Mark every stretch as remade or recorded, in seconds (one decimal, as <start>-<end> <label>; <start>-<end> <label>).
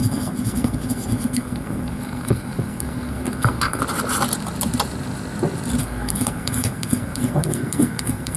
0.0-3.8 remade; 3.8-5.8 recorded; 5.8-8.4 remade